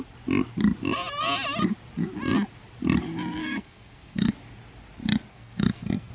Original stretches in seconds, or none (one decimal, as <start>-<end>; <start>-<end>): 0.0-3.4; 4.3-5.3